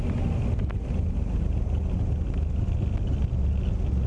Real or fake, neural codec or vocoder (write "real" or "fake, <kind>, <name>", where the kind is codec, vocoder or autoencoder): real